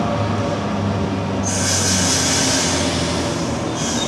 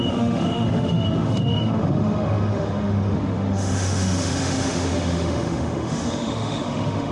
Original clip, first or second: first